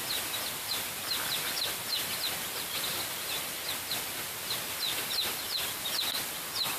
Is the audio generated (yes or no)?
no